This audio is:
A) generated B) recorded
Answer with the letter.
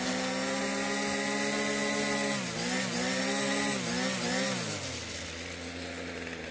B